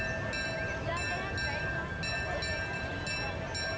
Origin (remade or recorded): recorded